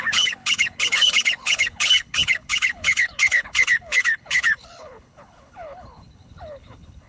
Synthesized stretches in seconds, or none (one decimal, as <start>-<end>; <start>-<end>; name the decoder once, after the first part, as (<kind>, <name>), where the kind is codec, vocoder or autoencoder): 0.0-7.1 (codec, HILCodec)